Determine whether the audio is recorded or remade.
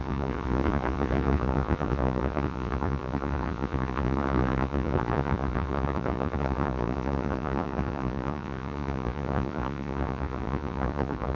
remade